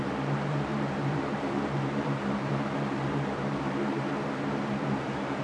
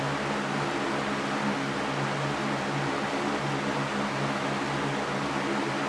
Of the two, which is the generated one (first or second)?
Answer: first